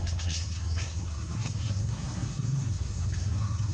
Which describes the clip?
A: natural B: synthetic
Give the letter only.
B